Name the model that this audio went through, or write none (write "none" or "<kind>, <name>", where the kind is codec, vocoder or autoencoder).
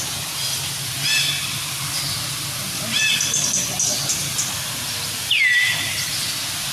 none